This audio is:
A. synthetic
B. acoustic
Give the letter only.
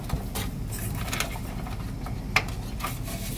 B